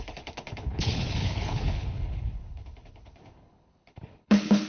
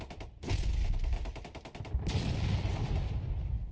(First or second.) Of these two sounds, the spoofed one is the first